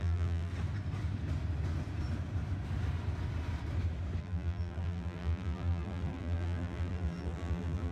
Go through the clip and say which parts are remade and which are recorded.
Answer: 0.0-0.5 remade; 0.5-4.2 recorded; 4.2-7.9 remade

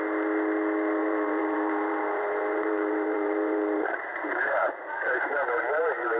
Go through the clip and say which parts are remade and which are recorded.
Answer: 0.0-1.0 recorded; 1.0-4.7 remade; 4.7-6.2 recorded